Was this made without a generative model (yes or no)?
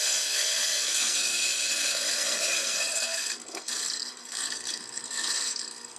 no